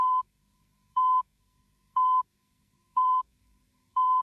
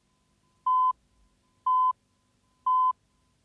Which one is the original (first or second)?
second